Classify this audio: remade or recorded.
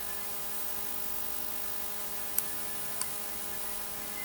recorded